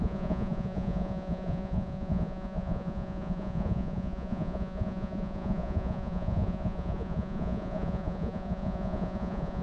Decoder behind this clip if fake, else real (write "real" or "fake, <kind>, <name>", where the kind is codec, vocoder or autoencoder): fake, vocoder, Vocos